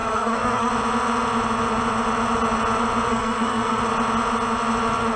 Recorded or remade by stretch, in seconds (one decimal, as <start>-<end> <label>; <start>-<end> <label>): 0.0-0.7 remade; 0.7-3.1 recorded; 3.1-3.8 remade; 3.8-5.2 recorded